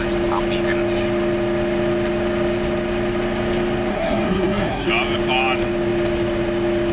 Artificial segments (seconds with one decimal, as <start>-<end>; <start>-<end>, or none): 3.9-4.9